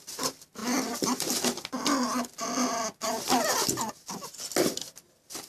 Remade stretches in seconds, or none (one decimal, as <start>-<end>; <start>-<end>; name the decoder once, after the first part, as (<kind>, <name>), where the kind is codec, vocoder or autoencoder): none